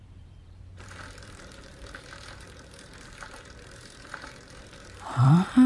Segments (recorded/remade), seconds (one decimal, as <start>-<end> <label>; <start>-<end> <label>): 0.0-5.7 remade